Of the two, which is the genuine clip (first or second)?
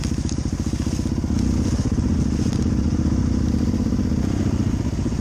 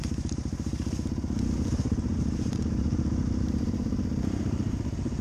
first